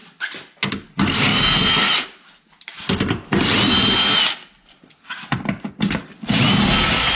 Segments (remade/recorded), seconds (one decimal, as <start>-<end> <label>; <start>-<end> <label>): 0.0-7.1 recorded